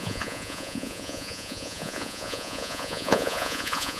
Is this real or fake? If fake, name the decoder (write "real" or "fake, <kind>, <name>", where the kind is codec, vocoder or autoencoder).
fake, vocoder, Vocos